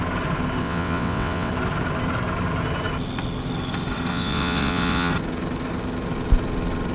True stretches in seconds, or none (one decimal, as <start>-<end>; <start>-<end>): 0.0-0.6; 1.5-4.1; 5.1-6.9